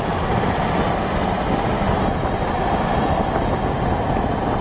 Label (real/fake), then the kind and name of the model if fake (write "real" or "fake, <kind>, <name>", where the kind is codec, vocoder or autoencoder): real